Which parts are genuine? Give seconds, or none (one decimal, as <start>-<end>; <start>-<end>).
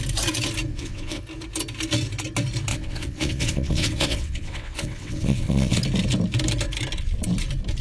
0.0-0.7; 1.2-2.7; 5.8-7.8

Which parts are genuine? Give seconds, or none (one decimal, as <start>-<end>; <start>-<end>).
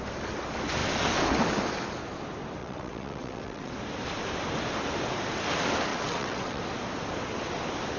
0.0-2.6; 3.7-5.9; 6.6-8.0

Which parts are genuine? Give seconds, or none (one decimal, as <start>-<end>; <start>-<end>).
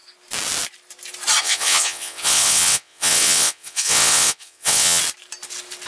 0.0-1.4; 5.0-5.9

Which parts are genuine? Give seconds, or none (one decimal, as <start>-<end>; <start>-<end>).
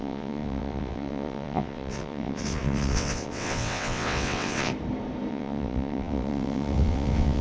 4.7-5.3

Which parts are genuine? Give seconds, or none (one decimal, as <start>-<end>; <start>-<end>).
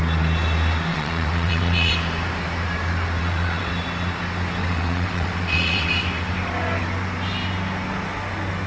0.0-0.9; 1.9-3.2; 3.7-4.6; 5.9-8.7